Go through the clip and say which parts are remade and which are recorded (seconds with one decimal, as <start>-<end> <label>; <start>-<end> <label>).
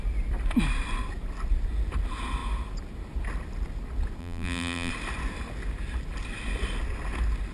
0.0-4.2 recorded; 4.2-4.9 remade; 4.9-7.5 recorded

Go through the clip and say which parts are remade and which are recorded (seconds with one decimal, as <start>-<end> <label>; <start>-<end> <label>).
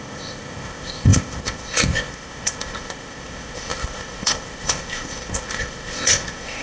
0.0-6.6 remade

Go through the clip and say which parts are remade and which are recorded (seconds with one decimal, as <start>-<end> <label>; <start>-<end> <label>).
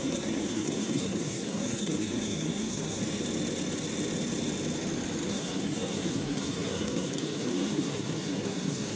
0.0-3.0 remade; 3.0-5.3 recorded; 5.3-9.0 remade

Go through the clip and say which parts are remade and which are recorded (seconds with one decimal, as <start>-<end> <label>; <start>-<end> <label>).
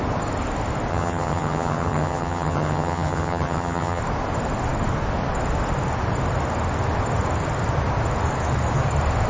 0.0-0.9 recorded; 0.9-4.0 remade; 4.0-9.3 recorded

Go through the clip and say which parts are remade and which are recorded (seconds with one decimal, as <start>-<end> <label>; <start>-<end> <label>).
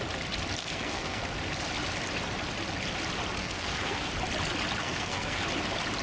0.0-0.6 recorded; 0.6-1.2 remade; 1.2-3.4 recorded; 3.4-4.1 remade; 4.1-4.8 recorded; 4.8-5.4 remade; 5.4-6.0 recorded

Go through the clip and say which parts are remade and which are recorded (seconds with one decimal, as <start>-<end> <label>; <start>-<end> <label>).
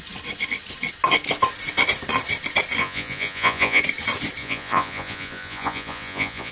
0.0-2.8 recorded; 2.8-3.8 remade; 3.8-4.4 recorded; 4.4-6.5 remade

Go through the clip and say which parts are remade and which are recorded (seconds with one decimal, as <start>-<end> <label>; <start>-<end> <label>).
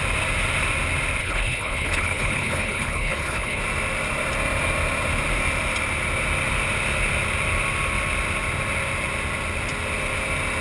0.0-1.2 recorded; 1.2-3.6 remade; 3.6-10.6 recorded